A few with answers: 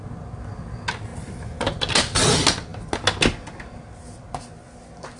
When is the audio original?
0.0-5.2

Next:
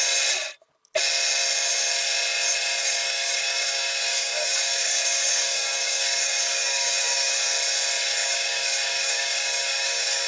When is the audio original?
0.0-2.8; 7.3-8.2

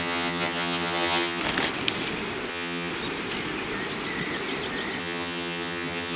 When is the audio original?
1.4-2.5; 2.9-5.0